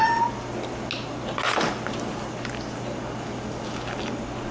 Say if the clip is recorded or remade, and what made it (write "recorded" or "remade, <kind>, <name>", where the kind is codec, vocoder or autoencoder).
recorded